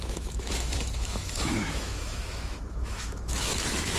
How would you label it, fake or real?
fake